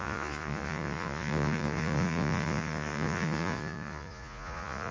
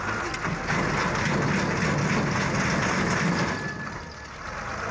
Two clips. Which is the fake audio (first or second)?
first